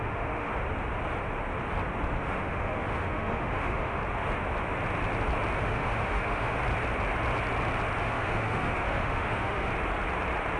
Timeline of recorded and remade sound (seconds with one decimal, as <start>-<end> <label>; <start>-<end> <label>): 0.0-0.5 remade; 0.5-2.2 recorded; 2.2-4.0 remade; 4.0-5.6 recorded; 5.6-6.6 remade; 6.6-8.0 recorded; 8.0-9.7 remade; 9.7-10.6 recorded